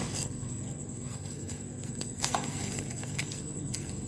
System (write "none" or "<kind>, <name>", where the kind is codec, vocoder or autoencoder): codec, SNAC